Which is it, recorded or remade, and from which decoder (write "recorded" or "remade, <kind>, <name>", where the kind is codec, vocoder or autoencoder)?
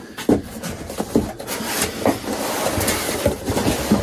recorded